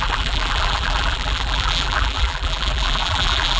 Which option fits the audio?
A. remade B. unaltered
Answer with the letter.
A